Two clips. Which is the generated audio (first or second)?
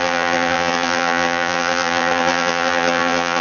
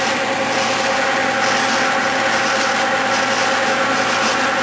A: first